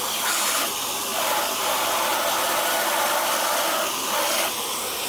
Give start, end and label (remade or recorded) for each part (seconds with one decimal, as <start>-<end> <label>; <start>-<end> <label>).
0.0-5.1 recorded